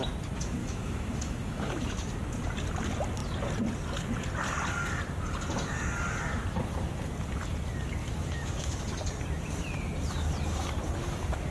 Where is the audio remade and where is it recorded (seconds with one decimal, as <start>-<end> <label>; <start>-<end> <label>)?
0.0-0.6 recorded; 0.6-1.8 remade; 1.8-8.0 recorded; 8.0-8.8 remade; 8.8-11.5 recorded